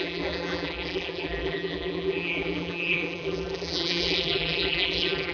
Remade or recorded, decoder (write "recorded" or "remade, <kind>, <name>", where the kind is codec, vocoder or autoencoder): remade, vocoder, BigVGAN v2